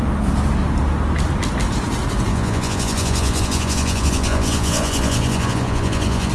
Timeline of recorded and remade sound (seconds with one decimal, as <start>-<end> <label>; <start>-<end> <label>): 0.0-2.3 recorded; 2.3-6.3 remade